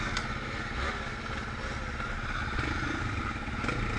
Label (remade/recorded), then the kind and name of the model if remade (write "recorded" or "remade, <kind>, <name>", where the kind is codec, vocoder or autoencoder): recorded